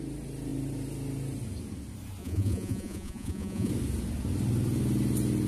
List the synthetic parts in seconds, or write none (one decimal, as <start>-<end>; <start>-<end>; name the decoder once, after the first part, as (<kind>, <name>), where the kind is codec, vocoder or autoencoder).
2.2-3.7 (vocoder, Vocos)